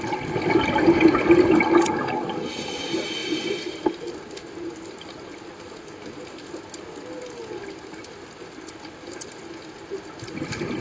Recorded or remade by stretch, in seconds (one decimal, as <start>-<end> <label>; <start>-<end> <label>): 0.0-10.8 recorded